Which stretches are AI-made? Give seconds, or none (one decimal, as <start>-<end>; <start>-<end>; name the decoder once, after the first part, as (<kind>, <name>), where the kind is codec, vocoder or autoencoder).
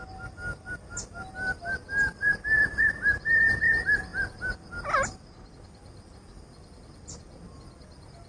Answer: none